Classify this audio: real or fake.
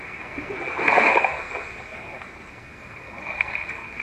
fake